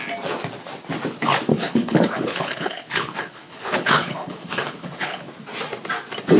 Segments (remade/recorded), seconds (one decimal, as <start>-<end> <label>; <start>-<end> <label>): 0.0-1.5 recorded; 1.5-5.3 remade; 5.3-6.4 recorded